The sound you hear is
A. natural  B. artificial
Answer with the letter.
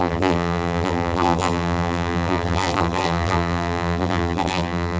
B